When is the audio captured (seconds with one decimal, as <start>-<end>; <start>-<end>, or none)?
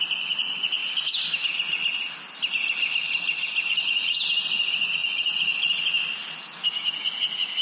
0.0-7.6